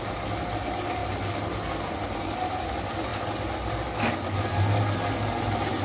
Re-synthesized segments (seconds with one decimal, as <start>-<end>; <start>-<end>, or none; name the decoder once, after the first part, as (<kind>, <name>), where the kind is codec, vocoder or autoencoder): none